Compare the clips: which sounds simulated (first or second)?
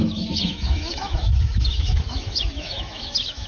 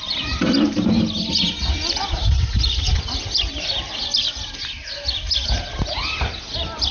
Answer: first